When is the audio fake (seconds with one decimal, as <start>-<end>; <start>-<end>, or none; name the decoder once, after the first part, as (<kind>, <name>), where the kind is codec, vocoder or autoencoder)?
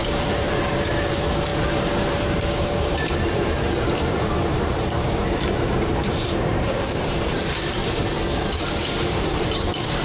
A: 0.0-7.8 (vocoder, BigVGAN v2); 8.5-10.0